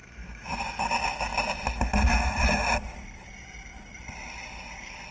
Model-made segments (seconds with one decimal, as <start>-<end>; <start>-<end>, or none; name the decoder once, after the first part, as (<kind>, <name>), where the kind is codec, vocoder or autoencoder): 0.0-0.6 (autoencoder, DAC-VAE)